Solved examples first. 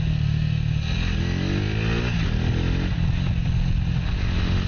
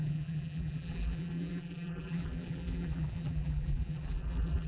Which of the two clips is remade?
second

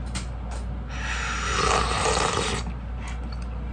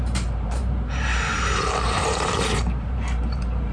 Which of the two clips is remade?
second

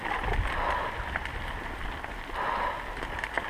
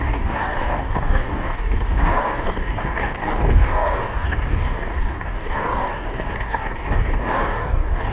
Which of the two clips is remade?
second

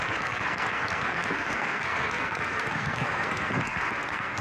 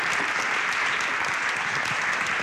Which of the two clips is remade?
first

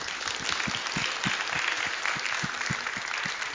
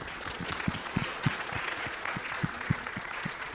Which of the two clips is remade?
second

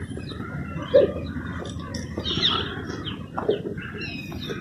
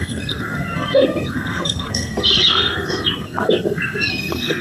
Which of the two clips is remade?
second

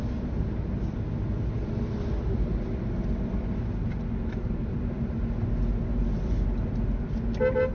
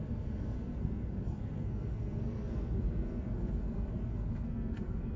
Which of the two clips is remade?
second